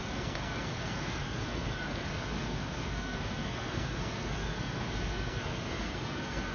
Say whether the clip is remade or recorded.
remade